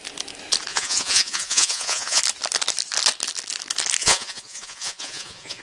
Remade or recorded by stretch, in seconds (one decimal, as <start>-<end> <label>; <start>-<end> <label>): 0.0-0.7 recorded; 0.7-2.2 remade; 2.2-4.0 recorded; 4.0-5.6 remade